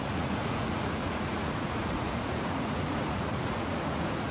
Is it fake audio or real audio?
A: fake